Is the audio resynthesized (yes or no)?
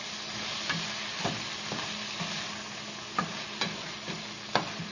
no